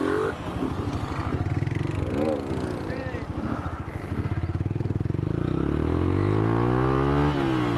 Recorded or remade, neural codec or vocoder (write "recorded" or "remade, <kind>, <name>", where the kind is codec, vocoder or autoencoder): recorded